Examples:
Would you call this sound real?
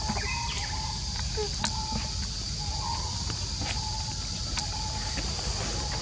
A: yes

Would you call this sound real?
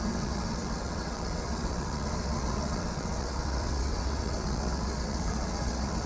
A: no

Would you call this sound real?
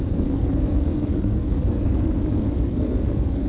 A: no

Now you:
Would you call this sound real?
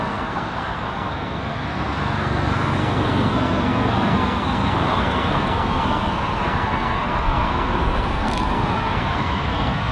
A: no